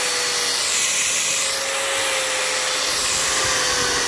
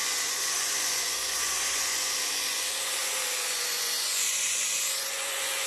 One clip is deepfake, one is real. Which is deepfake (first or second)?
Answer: second